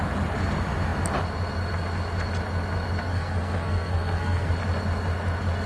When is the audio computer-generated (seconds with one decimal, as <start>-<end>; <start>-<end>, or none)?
3.1-4.5